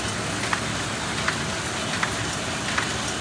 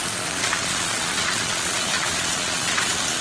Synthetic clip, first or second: second